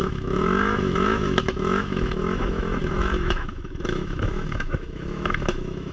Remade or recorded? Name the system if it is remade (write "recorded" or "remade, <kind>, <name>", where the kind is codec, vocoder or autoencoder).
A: remade, autoencoder, DAC-VAE